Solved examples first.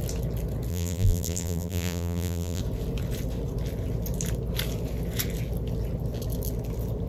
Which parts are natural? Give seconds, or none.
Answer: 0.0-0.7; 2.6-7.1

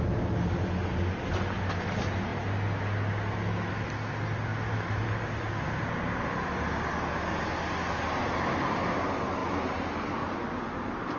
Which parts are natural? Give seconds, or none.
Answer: 0.0-11.2

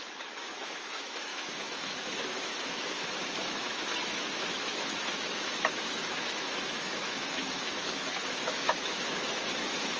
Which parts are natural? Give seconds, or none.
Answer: none